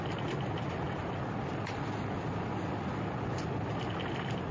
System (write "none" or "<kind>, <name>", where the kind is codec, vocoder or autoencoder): none